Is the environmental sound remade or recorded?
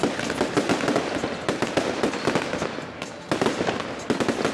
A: recorded